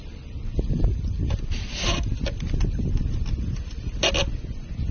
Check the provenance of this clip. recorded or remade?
recorded